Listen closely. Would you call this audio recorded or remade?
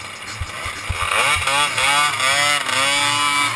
recorded